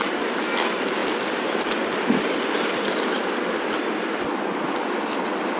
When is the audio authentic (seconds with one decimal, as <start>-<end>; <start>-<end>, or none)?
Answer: 0.0-5.6